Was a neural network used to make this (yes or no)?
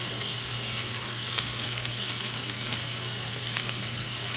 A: yes